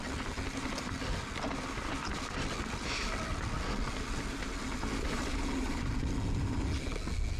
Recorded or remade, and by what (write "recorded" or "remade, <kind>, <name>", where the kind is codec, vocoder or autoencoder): recorded